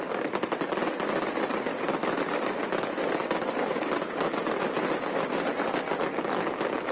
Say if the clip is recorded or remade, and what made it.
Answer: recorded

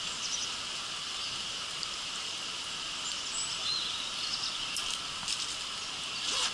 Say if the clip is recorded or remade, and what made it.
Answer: recorded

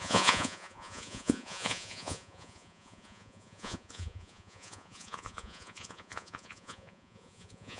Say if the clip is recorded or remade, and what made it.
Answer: remade, vocoder, Vocos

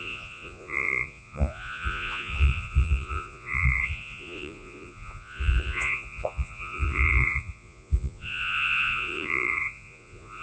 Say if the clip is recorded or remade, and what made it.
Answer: remade, vocoder, Vocos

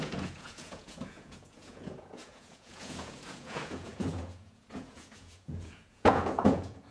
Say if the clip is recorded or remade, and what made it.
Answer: remade, vocoder, Vocos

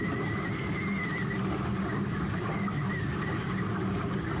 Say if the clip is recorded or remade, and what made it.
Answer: recorded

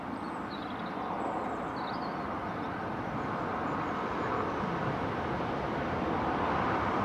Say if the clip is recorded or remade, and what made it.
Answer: recorded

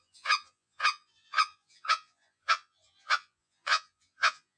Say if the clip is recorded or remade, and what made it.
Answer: remade, vocoder, Vocos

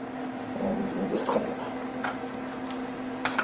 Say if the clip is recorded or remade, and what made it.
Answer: recorded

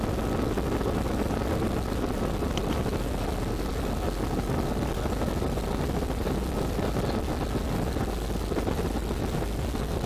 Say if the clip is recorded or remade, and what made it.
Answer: recorded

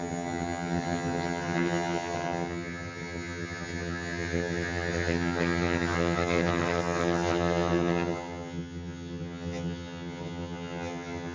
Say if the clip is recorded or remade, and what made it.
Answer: remade, vocoder, HiFi-GAN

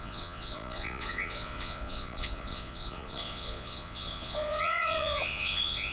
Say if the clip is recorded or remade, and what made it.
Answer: remade, vocoder, Vocos